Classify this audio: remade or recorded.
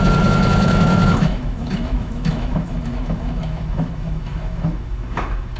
remade